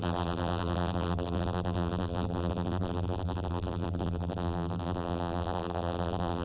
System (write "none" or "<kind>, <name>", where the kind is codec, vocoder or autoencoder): vocoder, BigVGAN v2